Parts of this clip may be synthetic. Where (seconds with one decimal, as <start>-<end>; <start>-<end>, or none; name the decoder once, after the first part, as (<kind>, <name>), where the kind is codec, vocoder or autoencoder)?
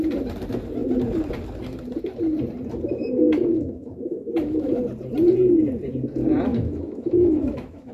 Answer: 3.0-4.8 (autoencoder, DAC-VAE); 6.5-7.9